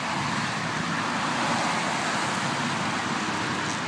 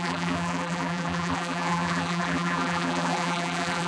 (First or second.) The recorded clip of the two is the first